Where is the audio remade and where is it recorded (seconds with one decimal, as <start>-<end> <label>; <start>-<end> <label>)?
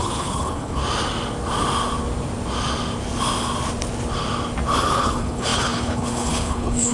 0.0-0.8 remade; 0.8-4.9 recorded; 4.9-6.9 remade